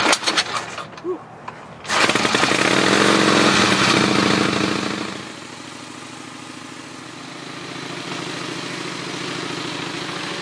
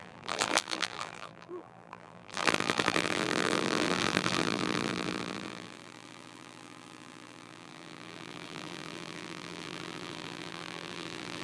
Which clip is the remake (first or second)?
second